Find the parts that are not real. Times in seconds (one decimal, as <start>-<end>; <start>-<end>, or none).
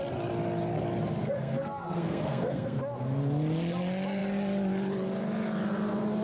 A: 1.2-2.8